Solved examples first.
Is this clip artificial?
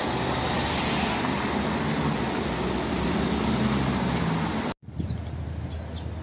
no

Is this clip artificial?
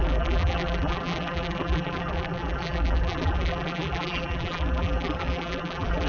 yes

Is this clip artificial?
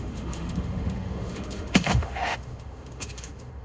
yes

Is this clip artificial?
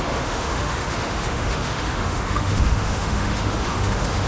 yes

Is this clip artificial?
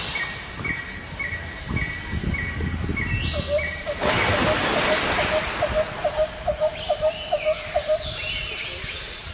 no